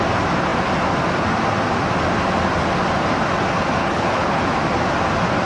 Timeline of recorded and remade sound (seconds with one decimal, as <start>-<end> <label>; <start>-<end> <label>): 0.0-3.8 recorded; 3.8-4.4 remade; 4.4-5.5 recorded